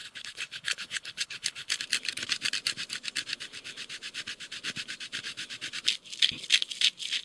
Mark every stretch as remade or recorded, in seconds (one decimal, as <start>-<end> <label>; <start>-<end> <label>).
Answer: 0.0-1.8 remade; 1.8-7.2 recorded